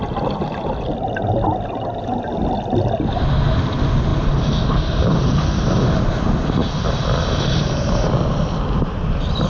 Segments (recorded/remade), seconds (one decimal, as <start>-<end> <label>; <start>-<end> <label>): 0.0-9.5 recorded